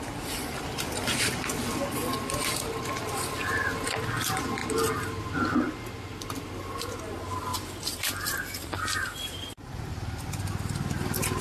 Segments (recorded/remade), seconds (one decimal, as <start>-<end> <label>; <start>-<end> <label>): 0.0-7.5 recorded; 7.5-9.8 remade; 9.8-11.4 recorded